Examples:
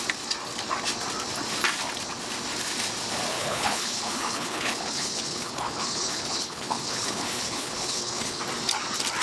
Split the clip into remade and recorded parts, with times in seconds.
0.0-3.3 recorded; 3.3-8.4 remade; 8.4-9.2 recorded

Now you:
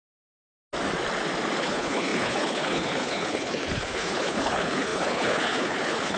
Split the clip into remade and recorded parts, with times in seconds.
0.0-1.6 recorded; 1.6-6.2 remade

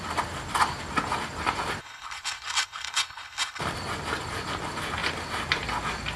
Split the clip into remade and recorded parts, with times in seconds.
0.0-1.8 recorded; 1.8-3.6 remade; 3.6-6.2 recorded

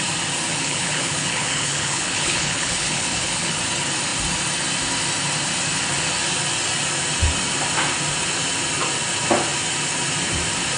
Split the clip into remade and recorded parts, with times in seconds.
0.0-0.5 recorded; 0.5-3.6 remade; 3.6-10.8 recorded

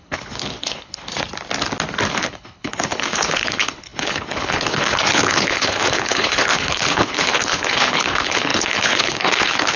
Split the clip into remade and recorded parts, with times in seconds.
0.0-1.1 remade; 1.1-2.1 recorded; 2.1-9.8 remade

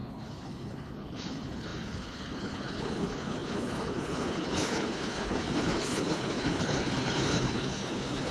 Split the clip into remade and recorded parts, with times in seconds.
0.0-8.3 remade

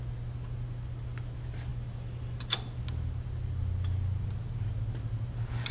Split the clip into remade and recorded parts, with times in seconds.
0.0-5.7 recorded

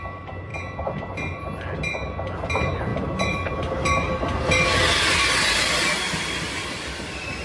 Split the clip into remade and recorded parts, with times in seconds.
0.0-7.4 recorded